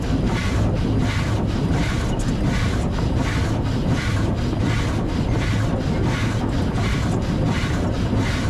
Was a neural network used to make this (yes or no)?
no